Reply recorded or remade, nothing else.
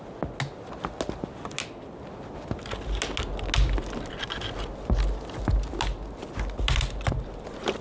recorded